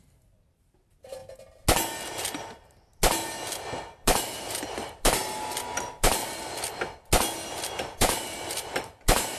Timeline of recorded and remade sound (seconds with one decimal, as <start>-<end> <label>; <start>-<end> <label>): 0.0-1.2 remade; 1.2-2.1 recorded; 2.1-2.9 remade; 2.9-3.8 recorded; 3.8-6.2 remade; 6.2-7.7 recorded; 7.7-9.4 remade